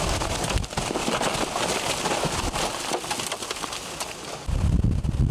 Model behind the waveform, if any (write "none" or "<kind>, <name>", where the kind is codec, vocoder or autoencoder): none